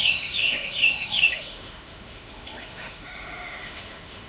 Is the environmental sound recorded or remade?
remade